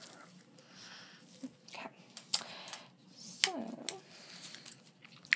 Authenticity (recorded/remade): recorded